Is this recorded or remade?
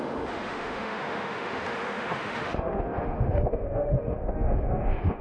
remade